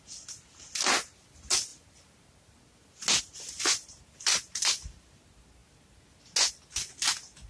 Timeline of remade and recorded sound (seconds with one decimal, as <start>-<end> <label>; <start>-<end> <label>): 0.0-7.5 recorded